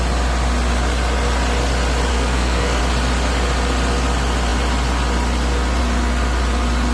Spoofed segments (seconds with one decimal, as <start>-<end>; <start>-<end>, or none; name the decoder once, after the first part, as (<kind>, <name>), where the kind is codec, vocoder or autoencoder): 2.1-2.8 (codec, SNAC)